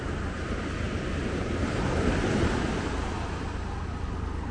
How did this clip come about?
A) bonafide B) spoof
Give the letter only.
A